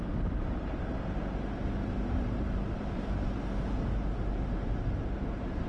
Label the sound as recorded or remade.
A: remade